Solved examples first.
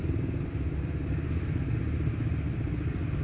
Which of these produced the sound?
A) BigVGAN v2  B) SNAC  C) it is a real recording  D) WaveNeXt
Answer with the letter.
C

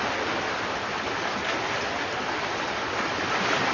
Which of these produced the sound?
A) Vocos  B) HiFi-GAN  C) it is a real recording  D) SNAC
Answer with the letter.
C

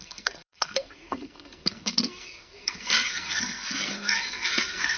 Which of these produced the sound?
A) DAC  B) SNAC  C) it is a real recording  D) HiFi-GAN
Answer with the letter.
B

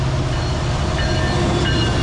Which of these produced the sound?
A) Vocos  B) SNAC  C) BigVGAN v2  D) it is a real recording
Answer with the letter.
D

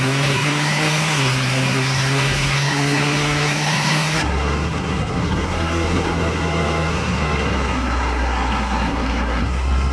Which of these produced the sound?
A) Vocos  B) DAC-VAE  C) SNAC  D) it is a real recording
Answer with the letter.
C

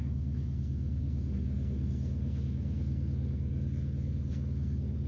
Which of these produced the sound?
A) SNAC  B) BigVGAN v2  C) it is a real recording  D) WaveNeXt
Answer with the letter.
A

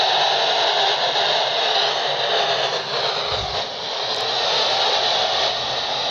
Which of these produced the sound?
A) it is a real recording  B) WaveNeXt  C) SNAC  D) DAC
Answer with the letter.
A